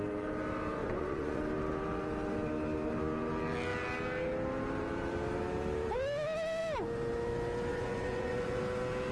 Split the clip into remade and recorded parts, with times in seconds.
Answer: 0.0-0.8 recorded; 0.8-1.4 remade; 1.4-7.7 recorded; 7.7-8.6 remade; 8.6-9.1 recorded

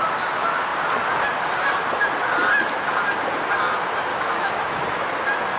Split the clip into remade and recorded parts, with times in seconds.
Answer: 0.0-4.1 recorded; 4.1-4.8 remade; 4.8-5.6 recorded